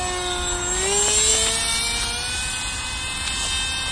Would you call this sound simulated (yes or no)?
no